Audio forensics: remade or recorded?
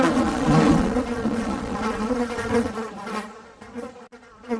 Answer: remade